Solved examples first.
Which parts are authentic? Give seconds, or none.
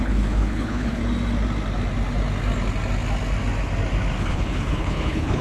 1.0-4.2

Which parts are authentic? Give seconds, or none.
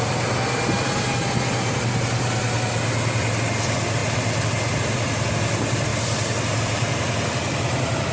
0.0-8.1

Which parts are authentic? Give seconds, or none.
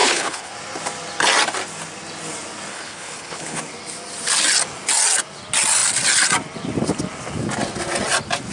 0.5-2.7; 3.6-8.5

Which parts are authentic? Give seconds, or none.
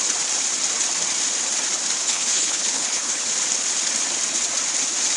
0.0-2.0; 3.3-5.2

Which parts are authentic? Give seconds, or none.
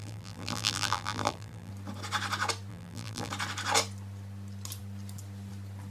1.7-2.7; 3.3-5.9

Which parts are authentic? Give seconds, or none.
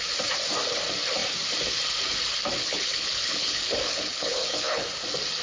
0.0-2.6; 4.9-5.4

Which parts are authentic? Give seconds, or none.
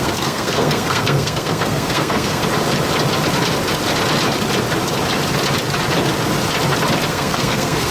2.4-7.1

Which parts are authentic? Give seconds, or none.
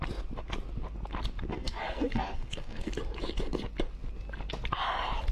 0.0-1.5; 2.9-5.3